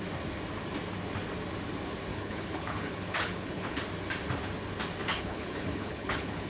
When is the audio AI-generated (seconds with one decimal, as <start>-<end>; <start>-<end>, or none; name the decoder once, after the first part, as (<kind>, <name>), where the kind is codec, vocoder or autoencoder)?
2.1-3.8 (codec, HILCodec); 5.1-6.5